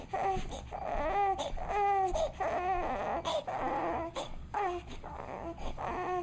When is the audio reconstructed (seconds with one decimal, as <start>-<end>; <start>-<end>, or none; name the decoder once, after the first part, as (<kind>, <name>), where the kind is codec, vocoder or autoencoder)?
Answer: 3.3-5.8 (codec, DAC)